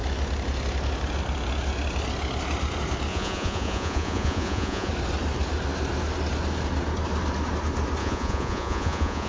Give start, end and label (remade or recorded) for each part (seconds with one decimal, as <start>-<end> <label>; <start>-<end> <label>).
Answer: 0.0-3.1 recorded; 3.1-4.9 remade; 4.9-8.0 recorded; 8.0-9.3 remade

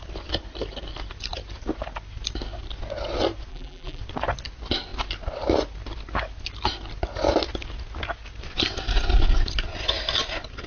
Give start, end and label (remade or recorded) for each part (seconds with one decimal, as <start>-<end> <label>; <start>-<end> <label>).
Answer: 0.0-3.5 recorded; 3.5-4.0 remade; 4.0-10.7 recorded

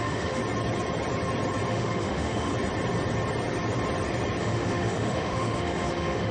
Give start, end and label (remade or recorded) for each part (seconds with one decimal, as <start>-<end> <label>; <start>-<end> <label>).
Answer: 0.0-0.4 remade; 0.4-1.7 recorded; 1.7-2.5 remade; 2.5-4.4 recorded; 4.4-6.3 remade

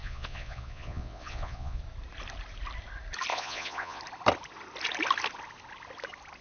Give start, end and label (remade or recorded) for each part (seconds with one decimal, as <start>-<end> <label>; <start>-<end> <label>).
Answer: 0.0-1.8 remade; 1.8-3.3 recorded; 3.3-4.0 remade; 4.0-6.4 recorded

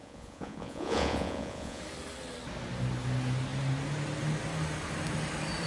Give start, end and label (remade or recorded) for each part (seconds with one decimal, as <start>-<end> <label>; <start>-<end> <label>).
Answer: 0.0-1.8 remade; 1.8-5.7 recorded

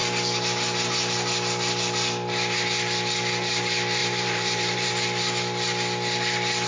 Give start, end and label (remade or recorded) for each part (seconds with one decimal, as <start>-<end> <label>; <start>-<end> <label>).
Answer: 0.0-4.0 recorded; 4.0-4.9 remade; 4.9-6.7 recorded

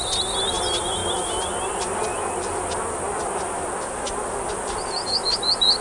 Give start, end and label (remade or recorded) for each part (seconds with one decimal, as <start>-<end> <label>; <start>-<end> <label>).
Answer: 0.0-5.8 recorded

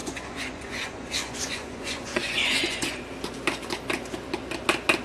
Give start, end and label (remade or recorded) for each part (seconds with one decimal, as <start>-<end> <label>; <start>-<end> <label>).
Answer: 0.0-3.0 remade; 3.0-5.0 recorded